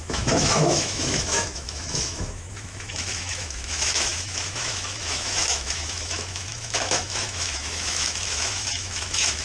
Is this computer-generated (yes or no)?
yes